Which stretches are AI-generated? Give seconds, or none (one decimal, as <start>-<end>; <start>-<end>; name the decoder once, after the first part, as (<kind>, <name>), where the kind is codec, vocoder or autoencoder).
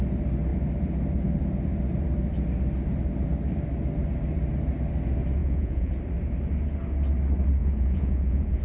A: 5.4-5.9 (vocoder, Vocos); 7.6-8.6